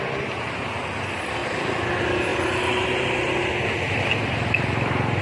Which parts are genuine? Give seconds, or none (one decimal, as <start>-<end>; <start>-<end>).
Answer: 0.0-5.2